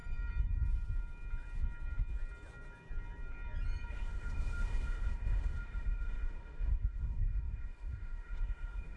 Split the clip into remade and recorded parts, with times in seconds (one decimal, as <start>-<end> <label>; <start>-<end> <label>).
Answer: 0.0-3.9 recorded; 3.9-9.0 remade